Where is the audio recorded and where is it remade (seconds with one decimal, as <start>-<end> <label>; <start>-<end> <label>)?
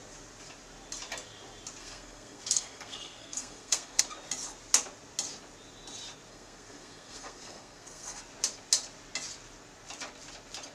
0.0-1.8 recorded; 1.8-4.0 remade; 4.0-6.3 recorded; 6.3-8.2 remade; 8.2-10.7 recorded